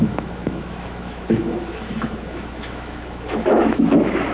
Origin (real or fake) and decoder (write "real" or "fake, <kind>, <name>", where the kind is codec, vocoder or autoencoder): fake, autoencoder, DAC-VAE